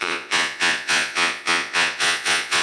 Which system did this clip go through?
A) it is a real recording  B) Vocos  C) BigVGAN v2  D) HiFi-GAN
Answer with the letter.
B